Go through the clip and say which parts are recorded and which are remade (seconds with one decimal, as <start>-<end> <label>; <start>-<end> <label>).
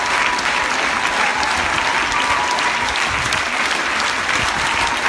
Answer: 0.0-5.1 recorded